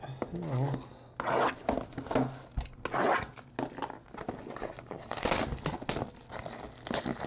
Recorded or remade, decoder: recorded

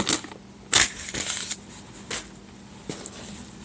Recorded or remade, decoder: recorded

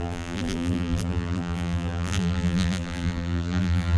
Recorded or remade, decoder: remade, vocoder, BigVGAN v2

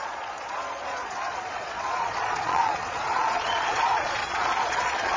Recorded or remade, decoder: remade, vocoder, Vocos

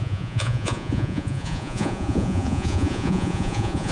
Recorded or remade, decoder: remade, vocoder, Vocos